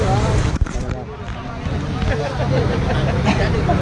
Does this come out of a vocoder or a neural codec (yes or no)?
no